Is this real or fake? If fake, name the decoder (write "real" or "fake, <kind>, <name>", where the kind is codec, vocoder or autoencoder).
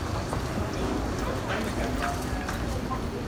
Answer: real